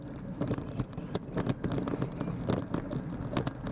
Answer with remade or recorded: recorded